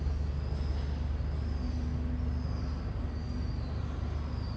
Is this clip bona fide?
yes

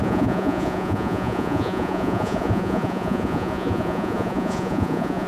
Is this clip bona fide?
no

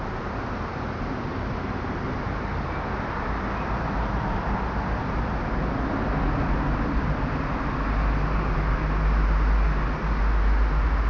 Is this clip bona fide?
yes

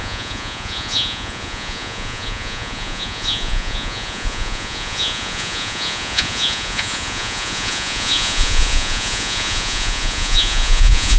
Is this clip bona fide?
no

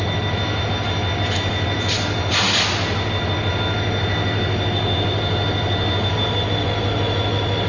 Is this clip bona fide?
yes